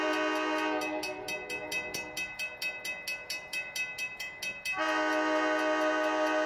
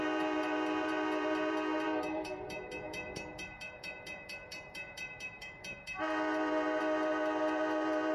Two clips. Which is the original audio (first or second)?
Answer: first